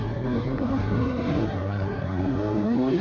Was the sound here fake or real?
fake